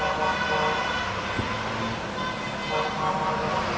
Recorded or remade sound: recorded